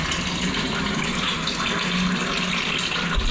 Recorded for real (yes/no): yes